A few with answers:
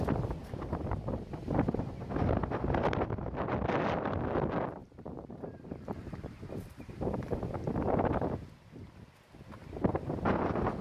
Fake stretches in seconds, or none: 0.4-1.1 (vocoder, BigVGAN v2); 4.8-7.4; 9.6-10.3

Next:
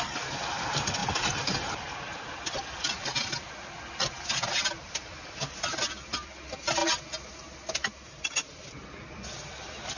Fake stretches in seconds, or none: none

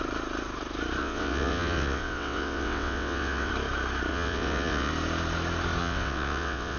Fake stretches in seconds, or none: 1.0-3.5 (vocoder, WaveNeXt); 4.1-4.9; 5.8-6.8

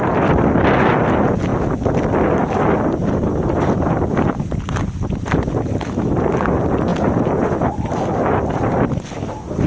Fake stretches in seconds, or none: 6.9-7.6 (vocoder, Vocos)

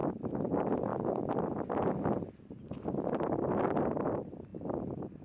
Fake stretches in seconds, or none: none

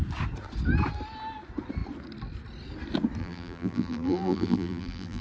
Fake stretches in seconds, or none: 3.2-5.2 (vocoder, BigVGAN v2)

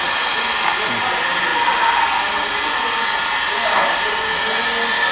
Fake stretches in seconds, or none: none